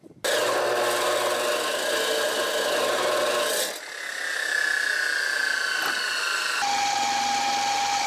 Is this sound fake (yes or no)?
no